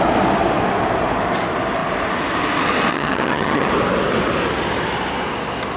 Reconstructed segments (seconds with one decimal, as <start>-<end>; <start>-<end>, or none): 2.9-3.7